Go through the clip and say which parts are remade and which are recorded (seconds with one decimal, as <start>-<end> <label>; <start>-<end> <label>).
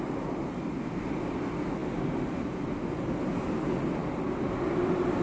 0.0-5.2 recorded